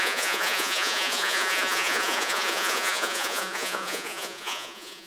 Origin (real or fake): fake